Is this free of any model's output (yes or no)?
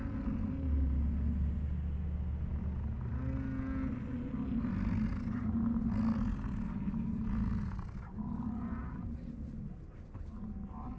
yes